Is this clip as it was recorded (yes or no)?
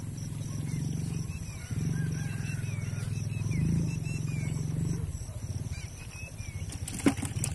yes